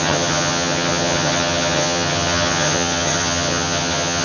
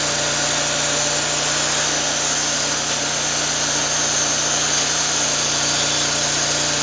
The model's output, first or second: first